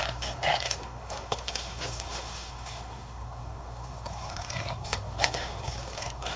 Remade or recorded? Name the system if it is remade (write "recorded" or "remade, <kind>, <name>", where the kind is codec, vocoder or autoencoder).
remade, codec, SNAC